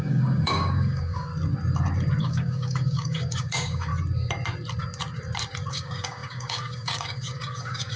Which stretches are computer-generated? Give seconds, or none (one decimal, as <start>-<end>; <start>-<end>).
0.0-1.3; 2.2-3.9; 5.7-8.0